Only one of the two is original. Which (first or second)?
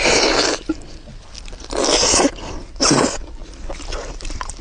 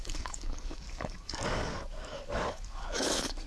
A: first